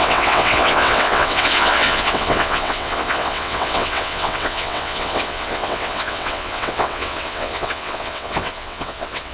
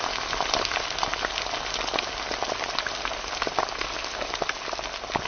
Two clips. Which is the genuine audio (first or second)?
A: second